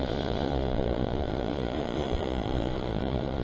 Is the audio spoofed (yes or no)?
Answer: yes